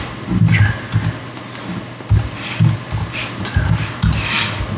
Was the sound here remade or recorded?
recorded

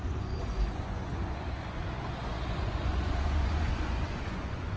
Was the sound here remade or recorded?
remade